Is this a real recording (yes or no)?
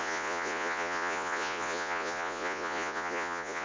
no